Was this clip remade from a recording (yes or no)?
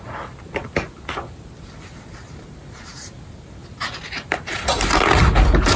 no